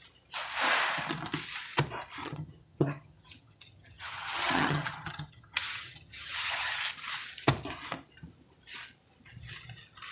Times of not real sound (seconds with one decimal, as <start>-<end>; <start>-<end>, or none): 2.2-6.8